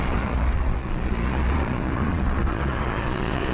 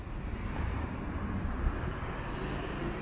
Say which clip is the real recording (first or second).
second